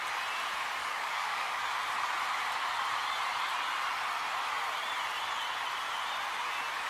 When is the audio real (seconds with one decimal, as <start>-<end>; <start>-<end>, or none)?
0.0-0.8; 1.6-6.9